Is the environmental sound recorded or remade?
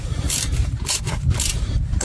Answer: remade